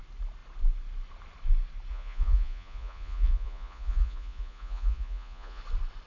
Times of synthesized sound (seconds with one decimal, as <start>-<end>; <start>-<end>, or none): 1.9-5.6